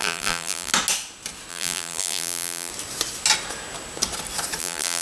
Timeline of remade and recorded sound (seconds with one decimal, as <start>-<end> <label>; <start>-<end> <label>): 0.0-0.7 remade; 0.7-1.5 recorded; 1.5-2.7 remade; 2.7-4.6 recorded; 4.6-5.0 remade